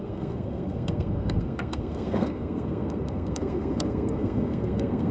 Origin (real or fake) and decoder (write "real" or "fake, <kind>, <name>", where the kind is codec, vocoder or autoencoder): fake, codec, SNAC